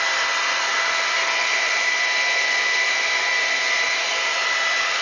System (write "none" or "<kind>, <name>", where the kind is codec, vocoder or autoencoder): none